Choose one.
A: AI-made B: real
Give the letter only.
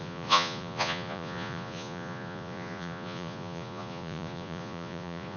A